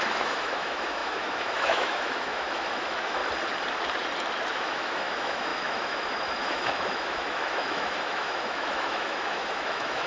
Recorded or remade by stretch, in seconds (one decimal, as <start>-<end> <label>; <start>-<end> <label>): 0.0-3.2 remade; 3.2-4.5 recorded; 4.5-10.1 remade